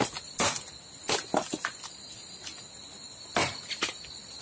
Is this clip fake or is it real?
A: real